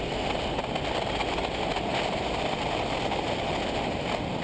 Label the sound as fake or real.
real